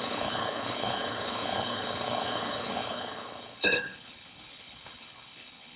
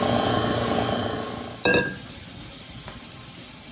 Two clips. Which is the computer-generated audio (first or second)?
first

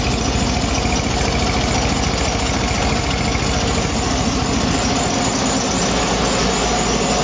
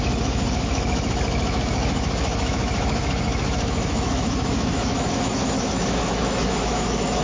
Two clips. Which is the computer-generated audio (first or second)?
second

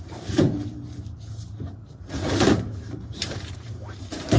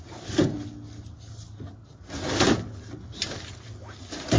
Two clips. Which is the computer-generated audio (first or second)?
first